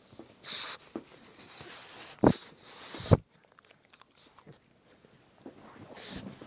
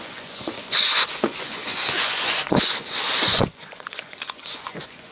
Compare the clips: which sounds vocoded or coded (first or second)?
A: second